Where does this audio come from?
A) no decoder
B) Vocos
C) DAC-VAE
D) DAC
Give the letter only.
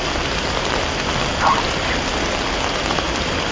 A